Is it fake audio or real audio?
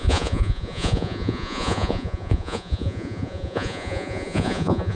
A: fake